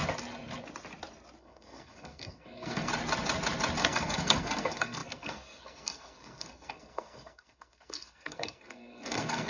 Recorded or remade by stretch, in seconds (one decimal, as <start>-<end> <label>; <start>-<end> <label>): 0.0-1.4 recorded; 1.4-2.9 remade; 2.9-3.8 recorded; 3.8-9.5 remade